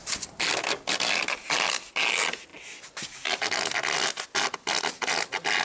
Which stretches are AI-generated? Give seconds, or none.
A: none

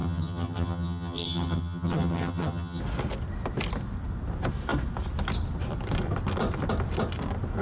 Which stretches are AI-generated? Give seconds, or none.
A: 0.0-2.8 (vocoder, HiFi-GAN)

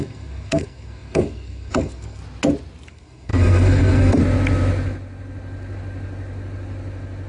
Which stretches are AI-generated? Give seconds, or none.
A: 0.0-2.2 (codec, SNAC); 2.9-4.2

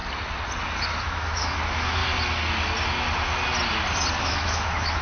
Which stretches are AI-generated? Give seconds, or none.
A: 1.0-2.0 (autoencoder, DAC-VAE); 4.2-5.0